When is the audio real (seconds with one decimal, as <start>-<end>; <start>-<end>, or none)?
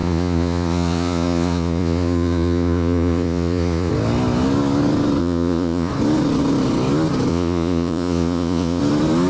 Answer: 3.9-5.2; 5.9-7.3; 8.8-9.3